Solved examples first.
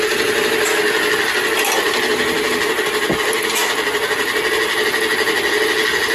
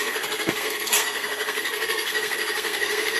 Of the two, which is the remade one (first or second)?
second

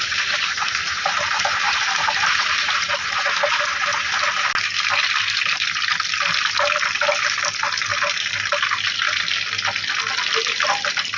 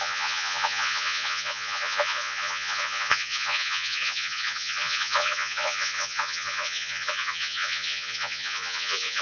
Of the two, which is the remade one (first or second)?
second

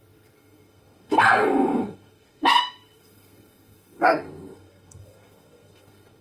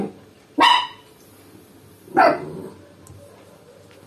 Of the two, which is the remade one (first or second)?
first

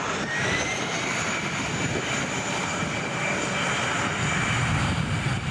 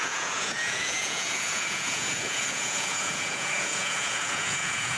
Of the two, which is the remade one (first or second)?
second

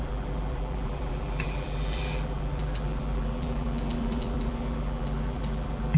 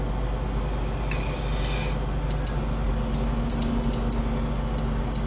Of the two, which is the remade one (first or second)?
first